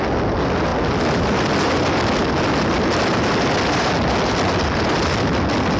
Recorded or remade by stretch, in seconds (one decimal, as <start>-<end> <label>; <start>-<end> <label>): 0.0-5.8 recorded